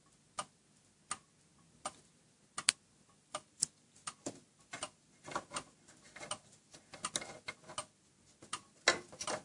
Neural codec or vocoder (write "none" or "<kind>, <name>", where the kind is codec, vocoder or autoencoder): none